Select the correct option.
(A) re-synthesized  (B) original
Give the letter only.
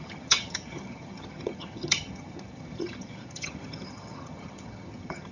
A